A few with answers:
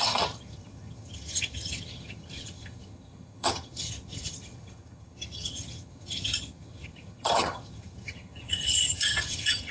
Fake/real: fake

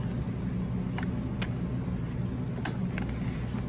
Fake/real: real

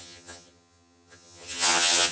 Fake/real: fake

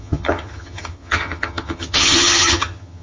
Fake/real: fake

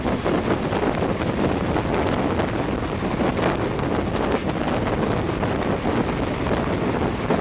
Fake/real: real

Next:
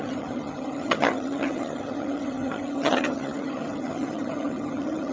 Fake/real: fake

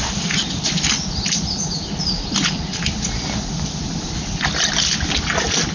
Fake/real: real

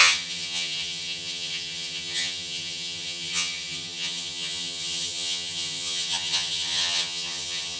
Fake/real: fake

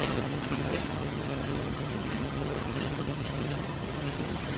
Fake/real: fake